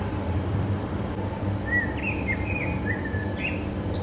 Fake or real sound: real